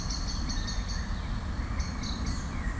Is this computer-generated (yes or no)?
no